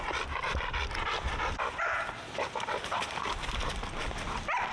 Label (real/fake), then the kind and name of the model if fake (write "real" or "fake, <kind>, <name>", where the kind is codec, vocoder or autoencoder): fake, vocoder, BigVGAN v2